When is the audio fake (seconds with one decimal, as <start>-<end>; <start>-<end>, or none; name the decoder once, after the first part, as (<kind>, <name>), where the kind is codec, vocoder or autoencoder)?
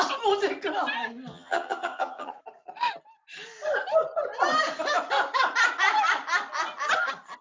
1.3-2.3 (vocoder, HiFi-GAN)